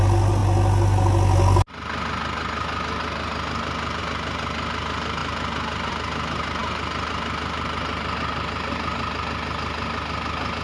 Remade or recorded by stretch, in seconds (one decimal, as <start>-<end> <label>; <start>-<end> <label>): 0.0-10.6 recorded